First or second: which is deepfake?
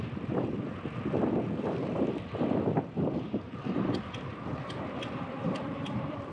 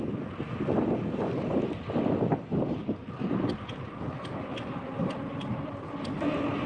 first